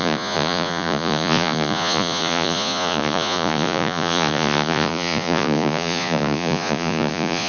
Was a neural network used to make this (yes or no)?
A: yes